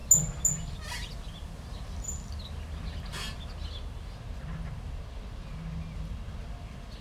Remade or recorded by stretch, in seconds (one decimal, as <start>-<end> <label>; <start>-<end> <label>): 0.0-7.0 recorded